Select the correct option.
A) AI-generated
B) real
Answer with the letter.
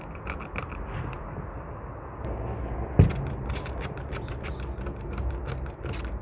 B